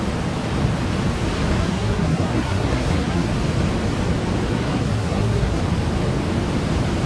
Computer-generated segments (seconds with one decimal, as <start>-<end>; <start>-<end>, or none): 1.6-3.3; 4.5-5.6